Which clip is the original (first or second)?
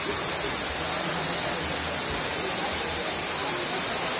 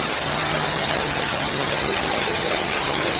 first